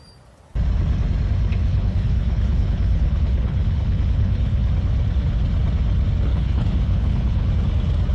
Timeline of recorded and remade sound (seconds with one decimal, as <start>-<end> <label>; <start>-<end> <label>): 0.0-1.6 recorded; 1.6-4.7 remade; 4.7-6.3 recorded; 6.3-7.5 remade; 7.5-8.1 recorded